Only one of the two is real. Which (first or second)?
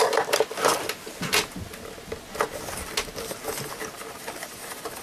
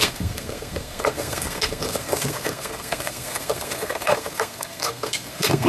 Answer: first